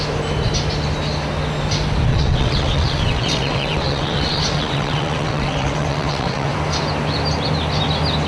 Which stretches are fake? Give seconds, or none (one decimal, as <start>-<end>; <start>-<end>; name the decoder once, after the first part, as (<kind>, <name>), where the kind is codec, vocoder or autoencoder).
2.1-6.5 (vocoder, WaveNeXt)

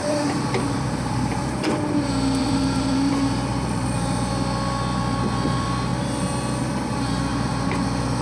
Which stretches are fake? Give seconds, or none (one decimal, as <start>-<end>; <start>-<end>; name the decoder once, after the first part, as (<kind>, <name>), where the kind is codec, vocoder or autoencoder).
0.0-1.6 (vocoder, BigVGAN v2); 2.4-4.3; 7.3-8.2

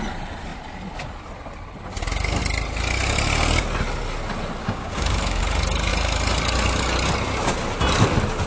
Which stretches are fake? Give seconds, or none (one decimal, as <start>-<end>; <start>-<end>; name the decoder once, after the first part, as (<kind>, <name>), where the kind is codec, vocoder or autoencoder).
4.6-5.4 (codec, DAC)

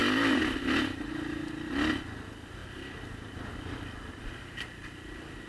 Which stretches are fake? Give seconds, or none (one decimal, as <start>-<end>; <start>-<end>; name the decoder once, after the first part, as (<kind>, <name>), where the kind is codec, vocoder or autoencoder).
none